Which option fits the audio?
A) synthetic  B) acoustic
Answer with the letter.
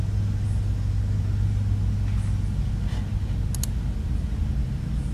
B